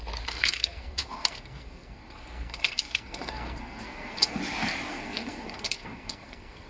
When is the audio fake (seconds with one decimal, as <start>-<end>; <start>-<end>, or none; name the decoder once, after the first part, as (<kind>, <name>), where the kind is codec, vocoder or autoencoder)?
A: 0.4-4.4 (codec, SNAC); 4.9-6.7